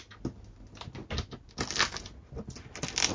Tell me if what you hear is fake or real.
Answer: real